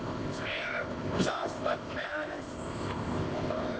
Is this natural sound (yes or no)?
no